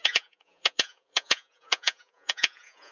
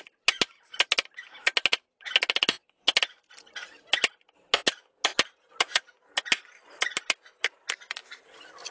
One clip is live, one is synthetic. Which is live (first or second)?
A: second